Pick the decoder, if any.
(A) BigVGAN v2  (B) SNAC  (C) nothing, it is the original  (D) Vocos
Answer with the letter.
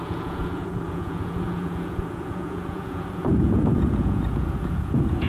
D